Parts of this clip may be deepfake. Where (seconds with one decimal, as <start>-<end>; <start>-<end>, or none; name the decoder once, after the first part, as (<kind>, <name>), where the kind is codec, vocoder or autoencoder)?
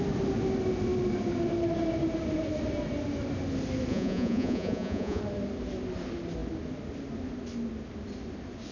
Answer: 3.9-5.2 (vocoder, Vocos)